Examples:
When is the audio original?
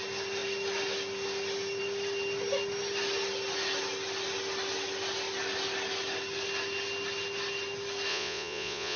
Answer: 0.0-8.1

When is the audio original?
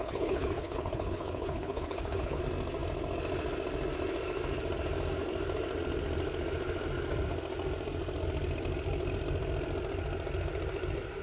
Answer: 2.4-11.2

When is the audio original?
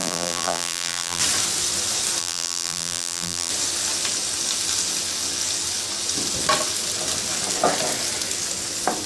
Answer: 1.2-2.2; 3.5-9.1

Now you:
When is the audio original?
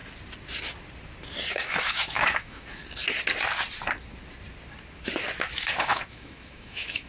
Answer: 0.0-1.5; 2.8-5.8